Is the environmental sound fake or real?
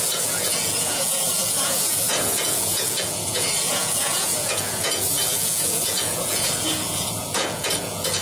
fake